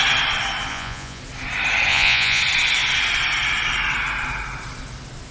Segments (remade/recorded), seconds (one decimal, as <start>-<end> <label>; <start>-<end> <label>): 0.0-0.7 recorded; 0.7-1.2 remade; 1.2-1.9 recorded; 1.9-2.4 remade; 2.4-5.3 recorded